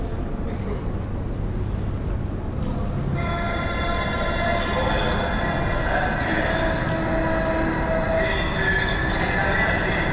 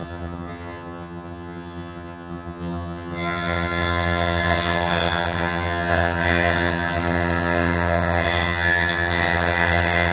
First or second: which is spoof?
second